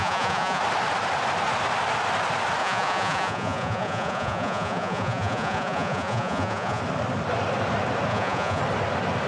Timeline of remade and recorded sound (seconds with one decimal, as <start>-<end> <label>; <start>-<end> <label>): 0.0-0.6 remade; 0.6-2.6 recorded; 2.6-6.8 remade; 6.8-8.1 recorded; 8.1-8.6 remade; 8.6-9.3 recorded